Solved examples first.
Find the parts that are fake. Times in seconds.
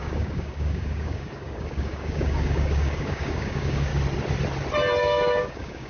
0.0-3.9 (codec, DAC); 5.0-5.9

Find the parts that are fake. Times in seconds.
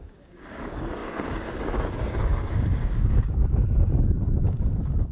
0.0-5.1 (codec, DAC)